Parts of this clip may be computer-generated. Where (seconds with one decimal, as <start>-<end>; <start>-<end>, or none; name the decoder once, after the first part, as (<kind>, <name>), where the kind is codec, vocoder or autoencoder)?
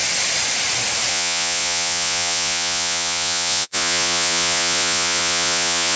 1.1-6.0 (vocoder, Vocos)